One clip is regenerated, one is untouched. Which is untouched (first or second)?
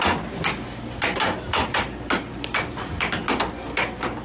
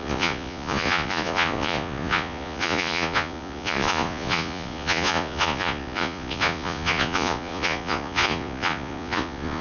first